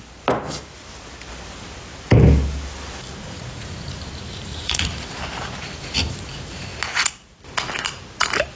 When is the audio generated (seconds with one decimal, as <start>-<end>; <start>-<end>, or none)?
3.2-4.1; 4.5-5.2